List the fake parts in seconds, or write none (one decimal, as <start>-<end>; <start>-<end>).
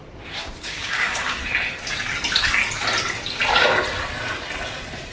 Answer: 0.4-1.4